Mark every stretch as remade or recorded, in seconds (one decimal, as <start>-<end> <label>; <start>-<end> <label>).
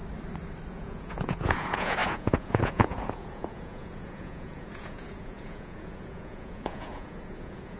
0.0-0.7 recorded; 0.7-7.8 remade